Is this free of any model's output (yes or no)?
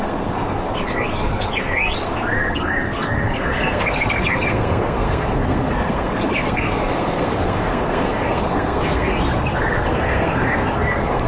no